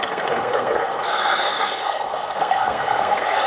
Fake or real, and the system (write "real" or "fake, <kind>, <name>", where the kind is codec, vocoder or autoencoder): fake, codec, SNAC